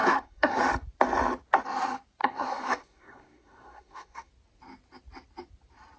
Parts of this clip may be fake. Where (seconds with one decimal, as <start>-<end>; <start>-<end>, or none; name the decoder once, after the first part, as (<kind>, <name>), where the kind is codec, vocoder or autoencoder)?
0.0-0.6 (codec, SNAC); 2.2-4.3